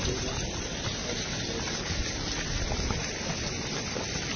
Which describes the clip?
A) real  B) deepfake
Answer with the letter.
A